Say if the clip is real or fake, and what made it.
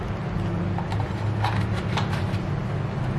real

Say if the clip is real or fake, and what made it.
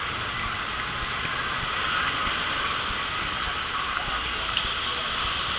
real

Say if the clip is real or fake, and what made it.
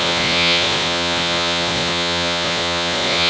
fake, vocoder, Vocos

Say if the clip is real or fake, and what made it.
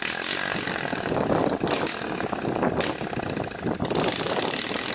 real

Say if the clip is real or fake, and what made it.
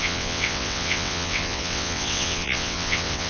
fake, vocoder, WaveNeXt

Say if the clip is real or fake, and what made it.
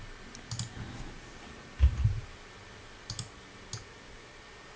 real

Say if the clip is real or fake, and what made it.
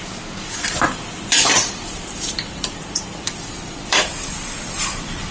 fake, vocoder, BigVGAN v2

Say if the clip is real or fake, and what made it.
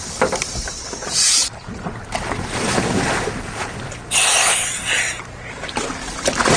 real